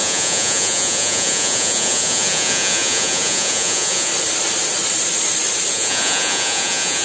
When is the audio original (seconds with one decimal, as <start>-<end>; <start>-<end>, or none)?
4.1-5.7